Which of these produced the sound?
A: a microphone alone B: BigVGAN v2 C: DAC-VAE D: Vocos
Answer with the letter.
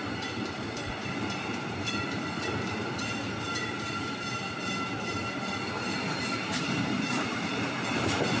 B